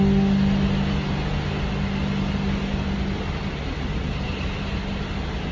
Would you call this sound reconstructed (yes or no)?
no